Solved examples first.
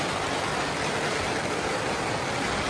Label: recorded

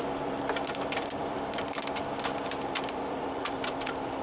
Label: remade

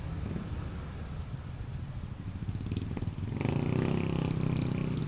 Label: recorded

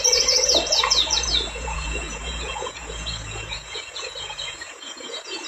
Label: remade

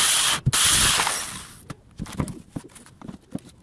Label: recorded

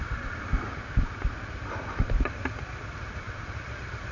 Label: recorded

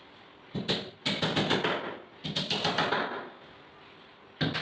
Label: recorded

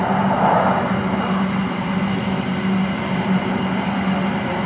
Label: recorded